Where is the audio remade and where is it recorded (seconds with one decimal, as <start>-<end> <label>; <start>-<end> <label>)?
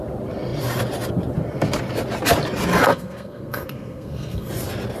0.0-2.9 recorded; 2.9-4.5 remade; 4.5-5.0 recorded